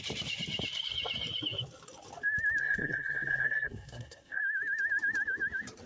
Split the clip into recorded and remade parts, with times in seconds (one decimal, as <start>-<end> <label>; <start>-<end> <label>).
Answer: 0.0-2.6 recorded; 2.6-4.4 remade; 4.4-5.9 recorded